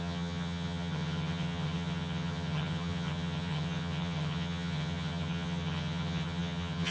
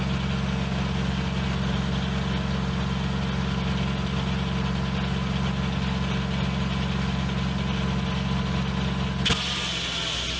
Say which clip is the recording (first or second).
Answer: second